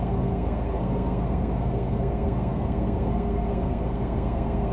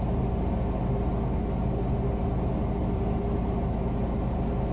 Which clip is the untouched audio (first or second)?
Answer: second